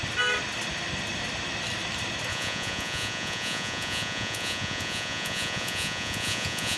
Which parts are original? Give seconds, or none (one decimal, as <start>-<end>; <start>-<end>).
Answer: 0.0-2.3